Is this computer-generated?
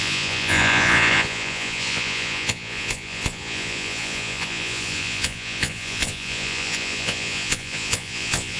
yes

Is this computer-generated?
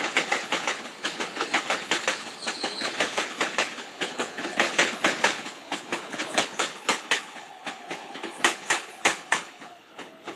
yes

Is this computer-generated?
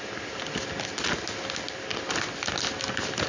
no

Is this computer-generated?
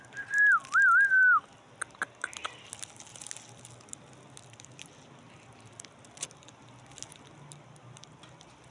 no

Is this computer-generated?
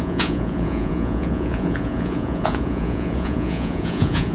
yes